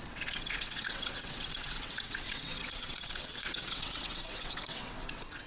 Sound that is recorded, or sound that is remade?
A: remade